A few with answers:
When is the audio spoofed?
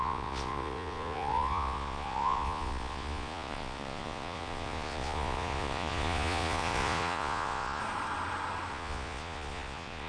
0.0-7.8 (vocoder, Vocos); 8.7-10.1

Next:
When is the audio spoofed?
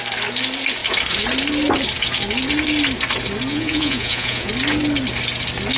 3.5-4.5 (vocoder, Vocos)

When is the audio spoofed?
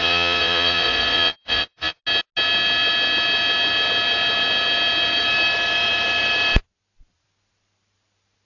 0.0-2.0 (vocoder, Vocos)